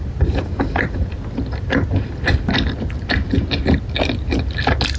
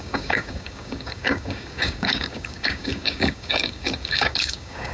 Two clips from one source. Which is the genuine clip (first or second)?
first